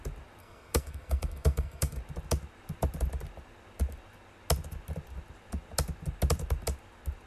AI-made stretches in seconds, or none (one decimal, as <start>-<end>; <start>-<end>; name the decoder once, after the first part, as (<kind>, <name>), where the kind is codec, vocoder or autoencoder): 0.4-2.0 (codec, SNAC)